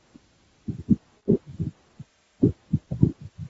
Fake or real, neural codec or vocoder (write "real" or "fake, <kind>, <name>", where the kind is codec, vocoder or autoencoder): real